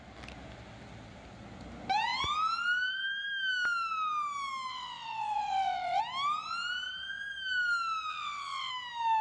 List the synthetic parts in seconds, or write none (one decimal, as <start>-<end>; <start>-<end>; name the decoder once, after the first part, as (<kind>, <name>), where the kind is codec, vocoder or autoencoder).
4.7-6.0 (vocoder, WaveNeXt); 8.1-8.7